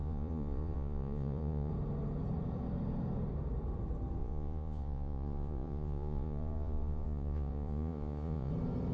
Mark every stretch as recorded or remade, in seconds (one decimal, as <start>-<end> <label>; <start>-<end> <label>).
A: 0.0-1.7 remade; 1.7-4.2 recorded; 4.2-8.5 remade; 8.5-8.9 recorded